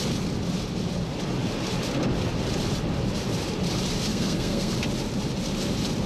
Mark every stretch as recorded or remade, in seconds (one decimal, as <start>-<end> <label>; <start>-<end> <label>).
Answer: 0.0-4.1 recorded; 4.1-4.7 remade; 4.7-6.1 recorded